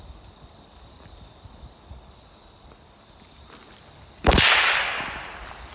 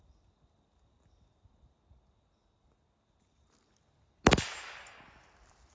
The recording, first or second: second